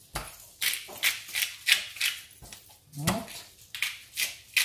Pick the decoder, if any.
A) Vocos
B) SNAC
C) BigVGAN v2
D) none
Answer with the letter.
D